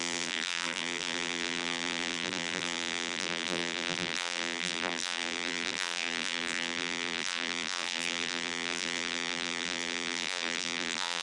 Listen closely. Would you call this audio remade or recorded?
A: remade